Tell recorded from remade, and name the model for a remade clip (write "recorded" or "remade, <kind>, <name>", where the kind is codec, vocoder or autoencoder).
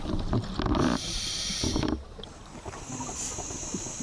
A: recorded